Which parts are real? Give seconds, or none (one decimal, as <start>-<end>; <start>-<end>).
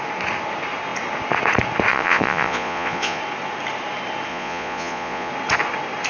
0.0-1.9; 3.2-4.3; 5.3-6.1